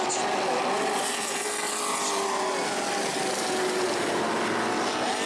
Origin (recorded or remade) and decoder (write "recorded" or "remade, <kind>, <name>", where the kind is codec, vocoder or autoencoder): recorded